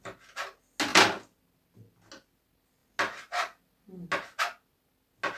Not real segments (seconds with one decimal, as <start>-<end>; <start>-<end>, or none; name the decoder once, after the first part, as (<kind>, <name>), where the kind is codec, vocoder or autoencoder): none